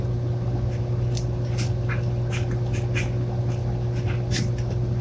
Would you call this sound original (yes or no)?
yes